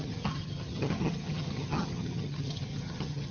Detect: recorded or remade remade